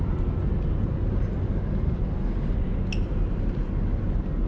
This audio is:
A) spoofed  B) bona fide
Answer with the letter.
B